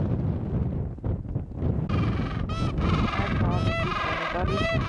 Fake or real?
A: real